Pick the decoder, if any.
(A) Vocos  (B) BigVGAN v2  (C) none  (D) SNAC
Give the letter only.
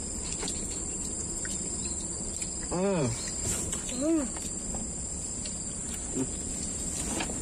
C